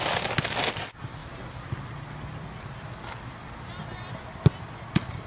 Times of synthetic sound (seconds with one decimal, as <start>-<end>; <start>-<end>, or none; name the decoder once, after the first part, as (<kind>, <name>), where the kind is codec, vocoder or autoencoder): none